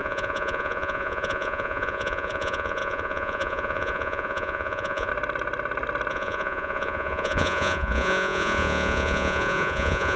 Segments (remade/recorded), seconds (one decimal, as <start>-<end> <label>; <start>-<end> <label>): 0.0-5.1 remade; 5.1-6.1 recorded; 6.1-10.2 remade